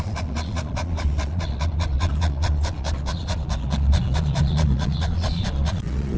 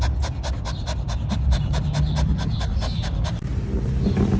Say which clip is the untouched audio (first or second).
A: second